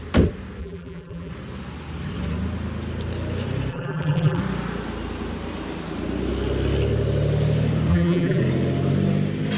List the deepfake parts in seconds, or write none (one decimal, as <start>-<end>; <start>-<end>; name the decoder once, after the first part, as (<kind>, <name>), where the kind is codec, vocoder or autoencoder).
0.6-1.3 (vocoder, BigVGAN v2); 3.7-4.4; 7.9-8.4